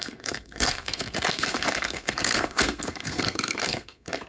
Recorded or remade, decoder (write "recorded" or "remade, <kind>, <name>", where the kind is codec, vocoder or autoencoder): remade, codec, SNAC